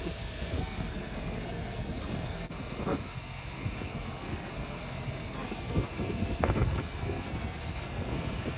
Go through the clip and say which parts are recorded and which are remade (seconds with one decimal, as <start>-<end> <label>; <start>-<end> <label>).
0.0-8.6 remade